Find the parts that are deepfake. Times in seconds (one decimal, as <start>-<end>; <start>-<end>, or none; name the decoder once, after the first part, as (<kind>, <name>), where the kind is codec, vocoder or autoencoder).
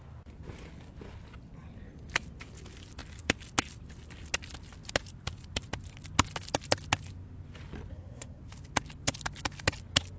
7.9-8.4 (codec, SNAC)